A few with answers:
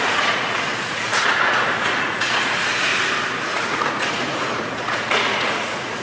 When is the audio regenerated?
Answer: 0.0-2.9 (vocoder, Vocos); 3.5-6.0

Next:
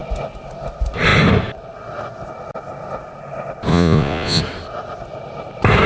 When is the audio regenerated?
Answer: 3.7-4.4 (vocoder, Vocos)

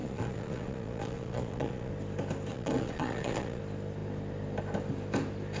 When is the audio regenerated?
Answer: 0.0-1.9 (vocoder, Vocos); 2.5-3.6

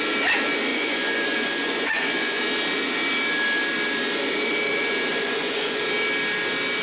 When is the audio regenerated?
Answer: 0.7-2.4 (vocoder, Vocos); 5.1-5.8

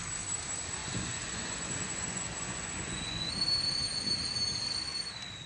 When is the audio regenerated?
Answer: 0.8-3.3 (vocoder, Vocos)